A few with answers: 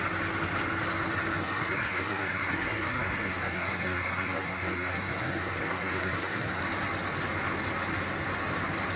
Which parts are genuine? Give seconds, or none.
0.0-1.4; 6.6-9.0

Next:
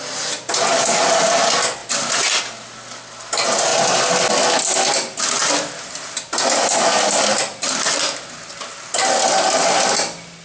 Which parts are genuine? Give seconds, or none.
0.0-10.4

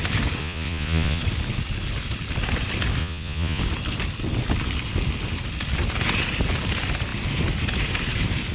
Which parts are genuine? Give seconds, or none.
0.0-0.4; 1.2-3.0; 3.6-8.5